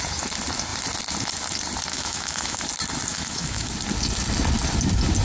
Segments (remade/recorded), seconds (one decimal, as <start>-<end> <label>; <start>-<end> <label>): 0.0-1.9 recorded; 1.9-2.6 remade; 2.6-3.1 recorded; 3.1-3.7 remade; 3.7-5.2 recorded